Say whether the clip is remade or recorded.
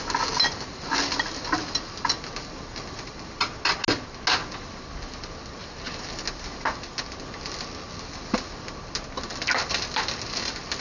recorded